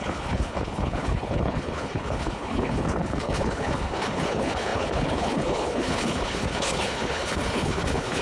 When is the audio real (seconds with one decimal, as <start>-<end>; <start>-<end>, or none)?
none